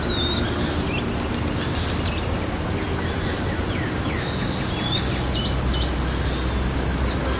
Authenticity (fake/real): real